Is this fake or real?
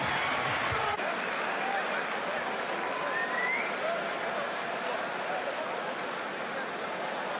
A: real